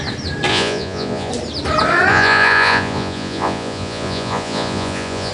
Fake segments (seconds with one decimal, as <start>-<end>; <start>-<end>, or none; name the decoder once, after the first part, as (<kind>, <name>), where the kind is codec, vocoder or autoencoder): 0.5-1.3 (vocoder, Vocos); 2.1-5.3